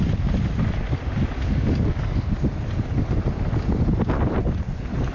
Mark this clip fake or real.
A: real